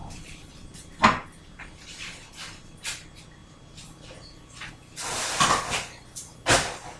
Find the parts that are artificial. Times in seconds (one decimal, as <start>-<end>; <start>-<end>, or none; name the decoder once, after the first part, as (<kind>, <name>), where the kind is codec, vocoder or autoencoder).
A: 0.0-1.8 (vocoder, BigVGAN v2); 3.4-4.7